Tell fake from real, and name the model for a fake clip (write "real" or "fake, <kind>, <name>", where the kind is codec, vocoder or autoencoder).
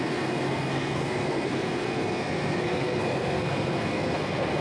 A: fake, codec, SNAC